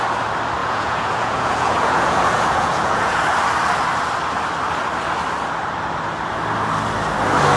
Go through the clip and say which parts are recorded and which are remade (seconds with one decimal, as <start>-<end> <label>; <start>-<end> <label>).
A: 0.0-0.6 recorded; 0.6-3.2 remade; 3.2-7.6 recorded